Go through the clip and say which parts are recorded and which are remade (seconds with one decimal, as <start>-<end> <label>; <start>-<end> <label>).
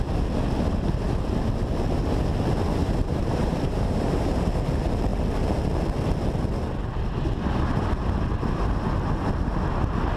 0.0-2.8 recorded; 2.8-4.5 remade; 4.5-10.2 recorded